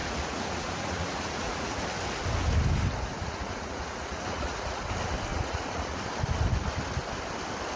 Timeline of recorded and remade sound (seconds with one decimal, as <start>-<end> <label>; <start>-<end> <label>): 0.0-1.8 remade; 1.8-3.1 recorded; 3.1-4.8 remade; 4.8-5.3 recorded; 5.3-6.1 remade; 6.1-7.8 recorded